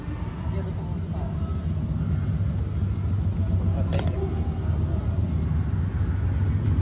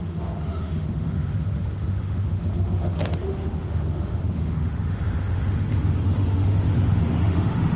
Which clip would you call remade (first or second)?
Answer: second